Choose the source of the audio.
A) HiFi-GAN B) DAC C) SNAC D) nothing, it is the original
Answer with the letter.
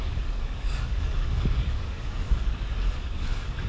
B